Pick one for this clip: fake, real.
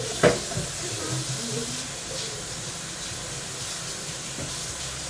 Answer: real